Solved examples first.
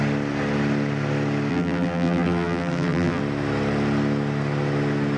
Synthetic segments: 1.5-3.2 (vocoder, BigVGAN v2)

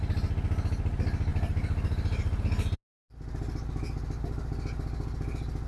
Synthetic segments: 1.3-2.4 (vocoder, BigVGAN v2)